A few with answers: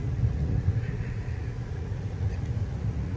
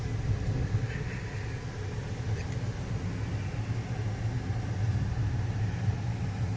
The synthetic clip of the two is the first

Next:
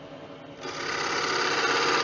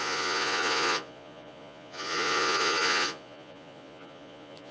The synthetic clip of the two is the second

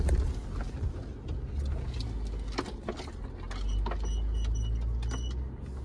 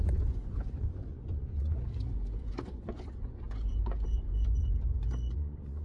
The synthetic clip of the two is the second